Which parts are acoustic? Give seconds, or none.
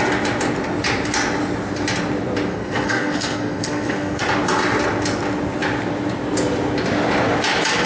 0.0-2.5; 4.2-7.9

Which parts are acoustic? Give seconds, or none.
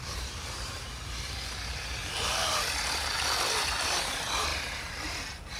2.0-3.8; 4.5-5.6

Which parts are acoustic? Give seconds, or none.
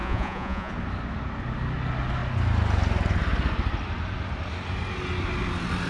0.7-5.9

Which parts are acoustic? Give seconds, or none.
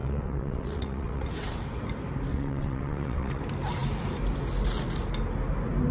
1.5-2.3; 3.4-5.9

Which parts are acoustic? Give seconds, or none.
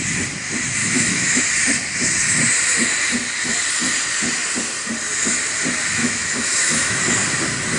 0.0-0.8; 1.4-6.0; 7.0-7.8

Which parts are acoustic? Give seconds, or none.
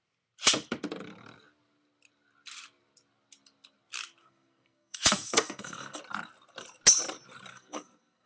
0.0-4.2; 6.0-7.5